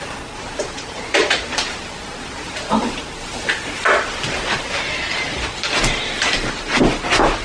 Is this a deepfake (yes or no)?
no